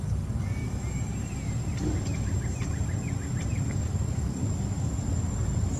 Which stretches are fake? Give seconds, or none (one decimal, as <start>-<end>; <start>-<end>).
0.0-0.6; 3.7-4.4